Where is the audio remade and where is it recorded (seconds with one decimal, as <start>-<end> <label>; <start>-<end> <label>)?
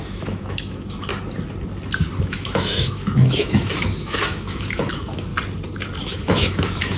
0.0-1.1 remade; 1.1-2.2 recorded; 2.2-5.3 remade; 5.3-6.0 recorded; 6.0-7.0 remade